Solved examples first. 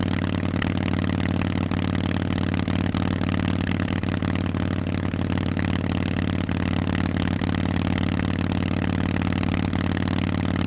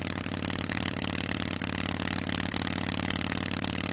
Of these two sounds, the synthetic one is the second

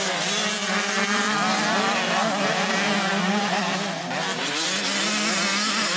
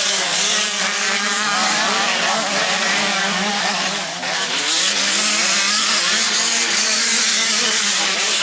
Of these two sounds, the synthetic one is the second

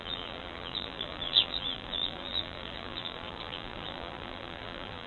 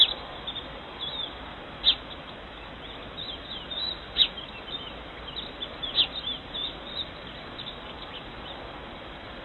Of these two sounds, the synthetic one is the first